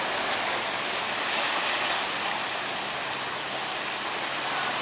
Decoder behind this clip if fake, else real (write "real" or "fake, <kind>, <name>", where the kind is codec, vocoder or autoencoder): real